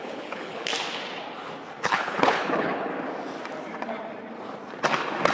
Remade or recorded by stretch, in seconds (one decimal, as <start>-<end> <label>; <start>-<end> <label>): 0.0-0.7 remade; 0.7-1.8 recorded; 1.8-2.9 remade; 2.9-5.3 recorded

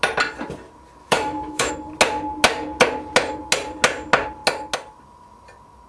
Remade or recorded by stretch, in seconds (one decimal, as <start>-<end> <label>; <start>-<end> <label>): 0.0-1.0 recorded; 1.0-1.7 remade; 1.7-5.9 recorded

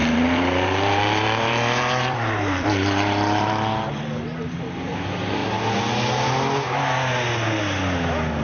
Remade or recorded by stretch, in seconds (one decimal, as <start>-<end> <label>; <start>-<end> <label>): 0.0-3.5 remade; 3.5-8.4 recorded

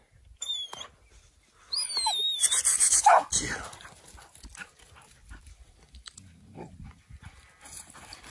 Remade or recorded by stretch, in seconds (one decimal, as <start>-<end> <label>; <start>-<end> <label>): 0.0-2.7 recorded; 2.7-3.3 remade; 3.3-8.3 recorded

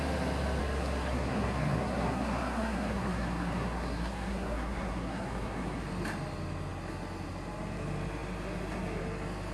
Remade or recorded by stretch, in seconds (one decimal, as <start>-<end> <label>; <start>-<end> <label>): 0.0-0.6 recorded; 0.6-5.8 remade; 5.8-9.5 recorded

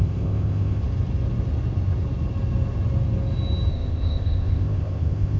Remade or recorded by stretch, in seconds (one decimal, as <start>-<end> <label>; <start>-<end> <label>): 0.0-0.8 remade; 0.8-3.7 recorded; 3.7-5.4 remade

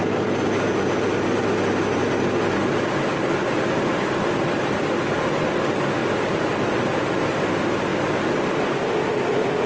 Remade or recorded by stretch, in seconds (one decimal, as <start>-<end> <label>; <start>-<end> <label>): 0.0-2.0 recorded; 2.0-3.3 remade; 3.3-6.0 recorded; 6.0-6.8 remade; 6.8-7.9 recorded; 7.9-8.8 remade; 8.8-9.7 recorded

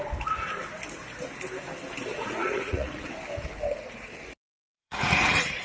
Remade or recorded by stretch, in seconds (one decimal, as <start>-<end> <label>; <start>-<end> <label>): 0.0-2.1 recorded; 2.1-3.2 remade; 3.2-4.5 recorded; 4.5-5.6 remade